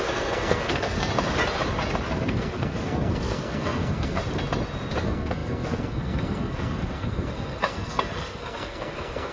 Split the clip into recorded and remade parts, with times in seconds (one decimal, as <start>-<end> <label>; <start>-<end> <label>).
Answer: 0.0-1.1 remade; 1.1-2.1 recorded; 2.1-4.2 remade; 4.2-5.0 recorded; 5.0-9.3 remade